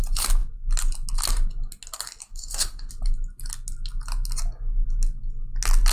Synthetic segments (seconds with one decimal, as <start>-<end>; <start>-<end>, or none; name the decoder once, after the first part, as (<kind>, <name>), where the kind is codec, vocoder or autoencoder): 2.2-2.9 (codec, DAC)